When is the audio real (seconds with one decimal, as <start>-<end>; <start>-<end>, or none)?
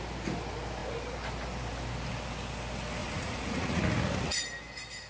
0.0-3.0; 3.8-5.1